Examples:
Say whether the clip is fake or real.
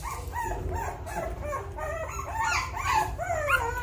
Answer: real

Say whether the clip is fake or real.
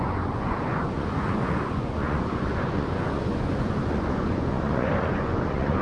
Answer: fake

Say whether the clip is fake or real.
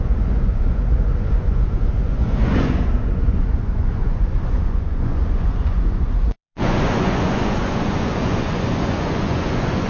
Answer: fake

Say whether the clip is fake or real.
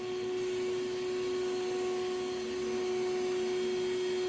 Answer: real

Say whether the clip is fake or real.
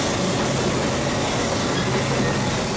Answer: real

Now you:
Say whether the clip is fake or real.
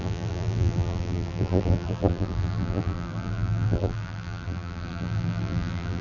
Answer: fake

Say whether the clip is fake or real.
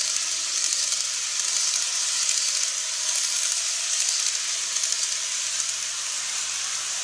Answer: real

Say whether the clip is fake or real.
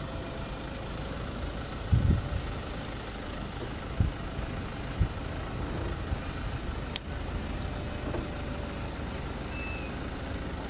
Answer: real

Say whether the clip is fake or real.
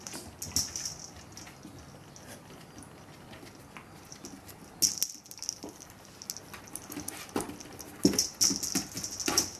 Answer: real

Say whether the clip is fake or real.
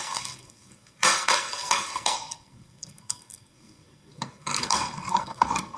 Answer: fake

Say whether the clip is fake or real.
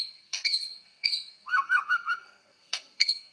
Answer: fake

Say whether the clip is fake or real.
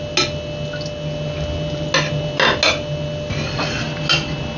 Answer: real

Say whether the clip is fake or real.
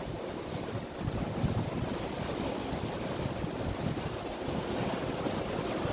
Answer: real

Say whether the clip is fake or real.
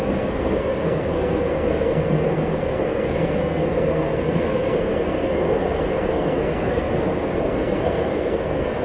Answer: fake